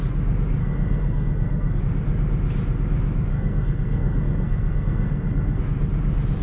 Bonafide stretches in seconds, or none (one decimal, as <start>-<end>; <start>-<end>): 0.0-0.6; 1.8-3.3; 5.6-6.4